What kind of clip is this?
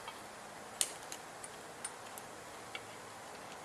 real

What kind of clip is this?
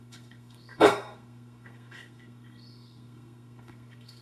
fake